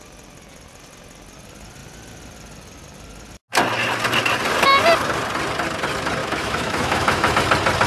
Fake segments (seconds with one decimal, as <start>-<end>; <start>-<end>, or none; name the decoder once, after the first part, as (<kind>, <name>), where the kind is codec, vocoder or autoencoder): 6.2-7.3 (autoencoder, DAC-VAE)